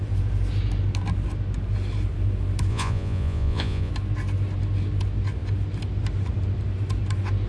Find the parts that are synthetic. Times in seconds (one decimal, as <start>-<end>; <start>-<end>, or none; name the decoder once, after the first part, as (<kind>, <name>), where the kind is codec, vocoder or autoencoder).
2.7-3.9 (vocoder, Vocos)